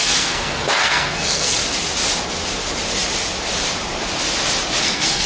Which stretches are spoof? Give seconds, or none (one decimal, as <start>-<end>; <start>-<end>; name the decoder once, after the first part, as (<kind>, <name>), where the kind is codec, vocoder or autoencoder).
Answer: 0.0-1.6 (codec, SNAC); 4.8-5.3